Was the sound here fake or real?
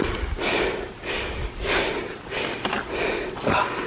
real